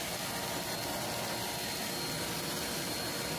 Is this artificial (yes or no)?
no